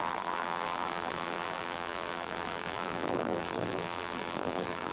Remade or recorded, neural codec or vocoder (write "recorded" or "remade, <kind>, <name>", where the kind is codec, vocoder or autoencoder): remade, vocoder, BigVGAN v2